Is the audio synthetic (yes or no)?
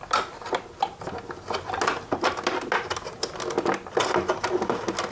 no